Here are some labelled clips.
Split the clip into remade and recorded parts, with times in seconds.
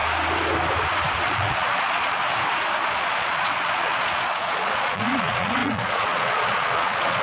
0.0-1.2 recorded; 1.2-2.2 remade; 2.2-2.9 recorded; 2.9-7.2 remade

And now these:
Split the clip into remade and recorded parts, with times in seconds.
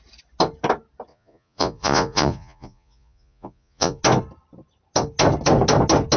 0.0-1.1 recorded; 1.1-4.0 remade; 4.0-6.2 recorded